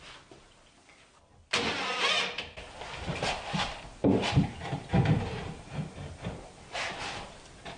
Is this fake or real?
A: real